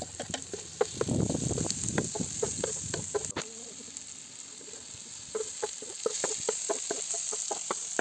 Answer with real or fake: real